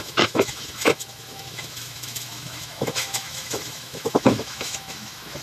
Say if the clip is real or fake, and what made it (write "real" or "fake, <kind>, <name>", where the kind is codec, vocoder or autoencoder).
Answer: fake, autoencoder, DAC-VAE